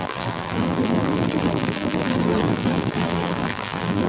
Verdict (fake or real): fake